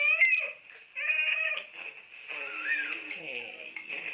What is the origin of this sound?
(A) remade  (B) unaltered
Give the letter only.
B